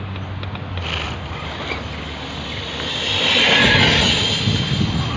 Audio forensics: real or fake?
real